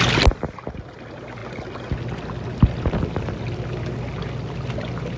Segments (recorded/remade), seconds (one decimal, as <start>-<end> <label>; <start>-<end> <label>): 0.0-5.2 recorded